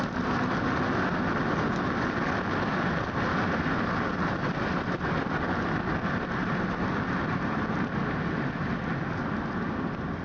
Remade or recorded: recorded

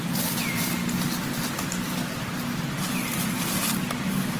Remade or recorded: recorded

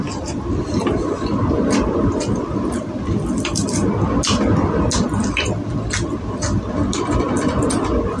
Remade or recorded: recorded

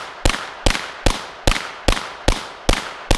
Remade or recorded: recorded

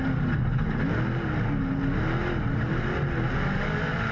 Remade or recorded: recorded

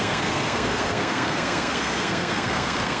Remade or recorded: remade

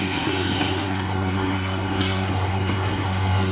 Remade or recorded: remade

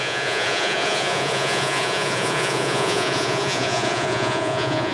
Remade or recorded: remade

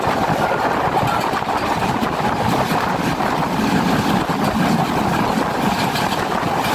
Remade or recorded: recorded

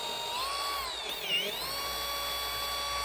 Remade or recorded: recorded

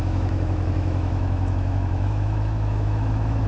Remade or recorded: remade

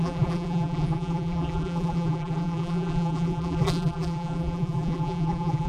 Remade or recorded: remade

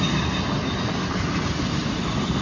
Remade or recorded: recorded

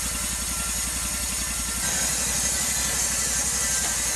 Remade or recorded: recorded